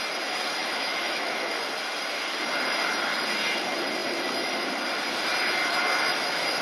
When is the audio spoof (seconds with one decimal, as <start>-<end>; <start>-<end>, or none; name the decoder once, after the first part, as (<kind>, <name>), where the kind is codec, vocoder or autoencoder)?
0.6-1.4 (autoencoder, DAC-VAE)